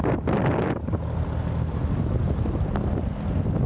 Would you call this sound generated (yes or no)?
no